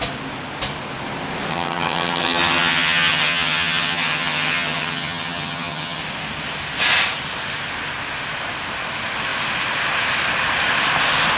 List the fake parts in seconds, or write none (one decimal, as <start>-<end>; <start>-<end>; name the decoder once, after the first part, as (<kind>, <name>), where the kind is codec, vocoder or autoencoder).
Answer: 1.5-6.0 (vocoder, HiFi-GAN)